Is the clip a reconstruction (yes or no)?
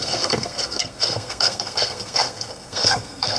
yes